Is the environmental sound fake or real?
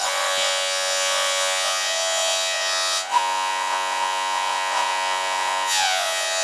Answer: fake